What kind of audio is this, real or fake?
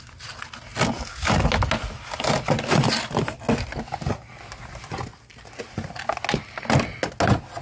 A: real